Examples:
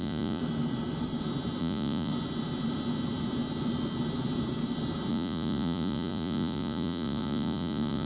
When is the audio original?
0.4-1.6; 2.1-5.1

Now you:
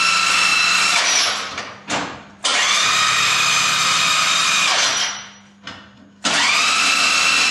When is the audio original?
0.0-7.5